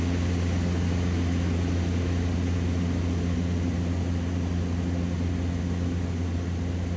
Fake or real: real